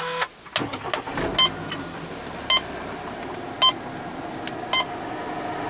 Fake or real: real